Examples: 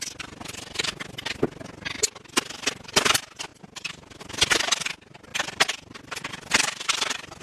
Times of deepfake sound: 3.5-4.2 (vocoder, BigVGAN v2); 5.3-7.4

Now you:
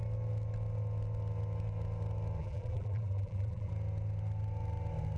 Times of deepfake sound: 2.4-3.7 (vocoder, BigVGAN v2)

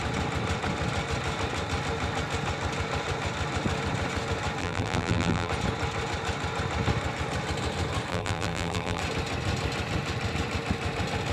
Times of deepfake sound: 4.6-5.5 (vocoder, BigVGAN v2); 8.1-9.0

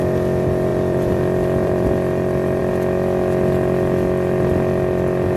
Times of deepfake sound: 0.7-2.6 (vocoder, BigVGAN v2)

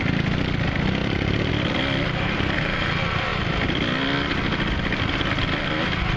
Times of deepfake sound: 1.0-1.5 (vocoder, BigVGAN v2); 3.3-5.0

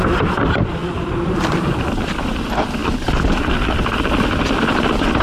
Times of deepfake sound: 0.0-5.2 (vocoder, BigVGAN v2)

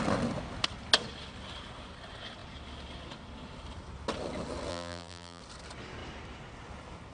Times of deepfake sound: 4.7-5.4 (vocoder, BigVGAN v2)

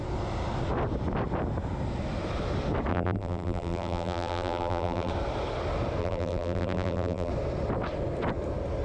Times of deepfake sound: 2.9-5.1 (vocoder, BigVGAN v2); 6.0-7.3